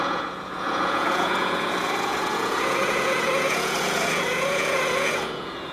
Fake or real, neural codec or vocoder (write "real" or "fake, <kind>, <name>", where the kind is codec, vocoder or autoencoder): fake, vocoder, Vocos